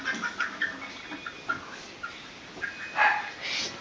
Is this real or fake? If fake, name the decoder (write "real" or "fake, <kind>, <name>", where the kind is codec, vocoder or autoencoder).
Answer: real